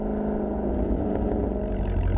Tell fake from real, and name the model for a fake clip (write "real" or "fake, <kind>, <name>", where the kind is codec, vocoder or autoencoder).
real